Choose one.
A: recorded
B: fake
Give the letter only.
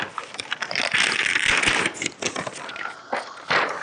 A